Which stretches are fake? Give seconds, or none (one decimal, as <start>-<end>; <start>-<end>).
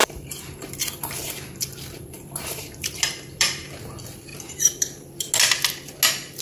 0.0-3.8; 4.3-5.3